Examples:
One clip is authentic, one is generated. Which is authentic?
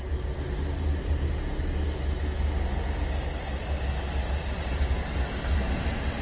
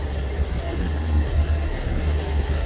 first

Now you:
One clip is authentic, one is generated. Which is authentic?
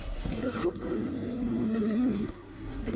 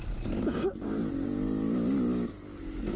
second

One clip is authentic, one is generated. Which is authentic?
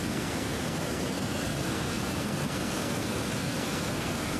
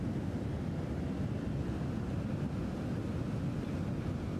second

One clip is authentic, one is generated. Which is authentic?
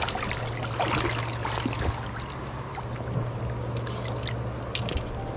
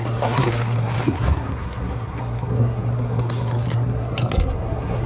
first